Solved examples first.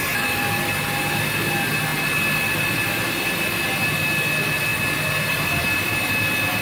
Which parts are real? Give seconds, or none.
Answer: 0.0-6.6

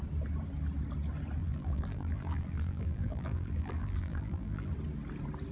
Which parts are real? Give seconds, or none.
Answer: 0.0-1.4; 4.7-5.5

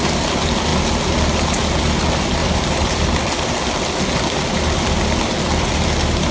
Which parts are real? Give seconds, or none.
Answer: 0.0-6.3

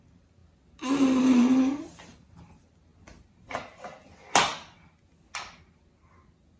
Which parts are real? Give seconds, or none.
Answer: 0.4-1.2; 2.9-6.6